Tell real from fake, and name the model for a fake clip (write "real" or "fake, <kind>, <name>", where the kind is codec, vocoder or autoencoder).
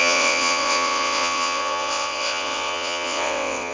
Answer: fake, vocoder, WaveNeXt